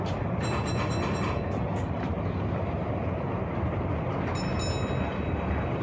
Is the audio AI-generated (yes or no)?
no